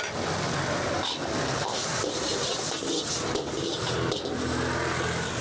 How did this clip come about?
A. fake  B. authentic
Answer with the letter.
B